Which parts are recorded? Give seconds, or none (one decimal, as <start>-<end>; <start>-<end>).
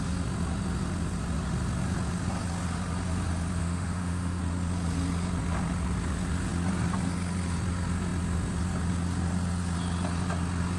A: 0.0-3.6; 4.4-10.8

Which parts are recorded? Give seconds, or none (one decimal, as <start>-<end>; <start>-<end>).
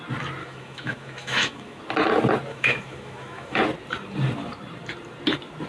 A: 0.0-0.4; 1.8-2.5; 3.6-5.7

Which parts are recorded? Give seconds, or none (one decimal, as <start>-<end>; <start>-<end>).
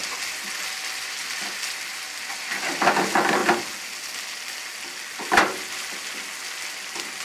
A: 0.0-7.2